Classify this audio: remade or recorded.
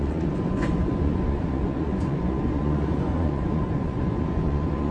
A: remade